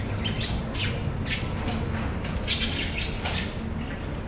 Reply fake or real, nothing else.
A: real